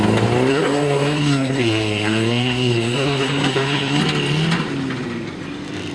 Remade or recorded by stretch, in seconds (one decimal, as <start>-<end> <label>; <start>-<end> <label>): 0.0-0.5 recorded; 0.5-4.0 remade; 4.0-5.9 recorded